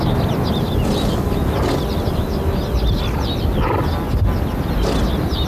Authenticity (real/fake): real